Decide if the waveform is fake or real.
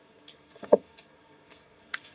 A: fake